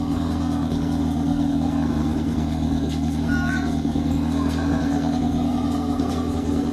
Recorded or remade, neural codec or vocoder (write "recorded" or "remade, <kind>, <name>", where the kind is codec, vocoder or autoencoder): remade, codec, SNAC